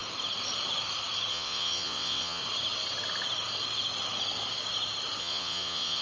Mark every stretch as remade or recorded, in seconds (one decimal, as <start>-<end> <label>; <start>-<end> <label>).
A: 0.0-1.3 recorded; 1.3-2.4 remade; 2.4-5.2 recorded; 5.2-6.0 remade